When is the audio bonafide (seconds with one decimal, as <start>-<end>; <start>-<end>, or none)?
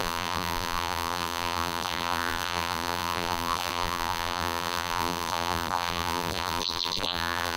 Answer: none